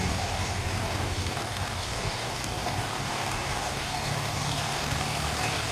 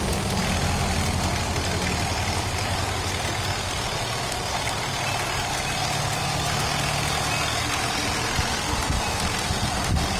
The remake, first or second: first